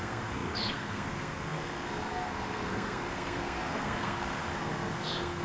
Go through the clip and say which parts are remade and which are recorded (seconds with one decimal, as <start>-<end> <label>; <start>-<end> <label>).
0.0-5.4 remade